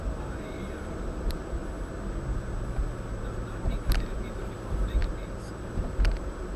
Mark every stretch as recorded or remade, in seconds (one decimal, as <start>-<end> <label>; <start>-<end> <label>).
0.0-1.6 remade; 1.6-4.4 recorded; 4.4-6.6 remade